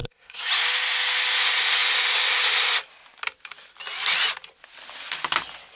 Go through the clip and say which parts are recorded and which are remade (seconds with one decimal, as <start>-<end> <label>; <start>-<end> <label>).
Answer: 0.0-0.5 remade; 0.5-5.8 recorded